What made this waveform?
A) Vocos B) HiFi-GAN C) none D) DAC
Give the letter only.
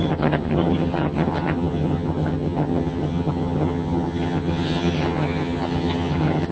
B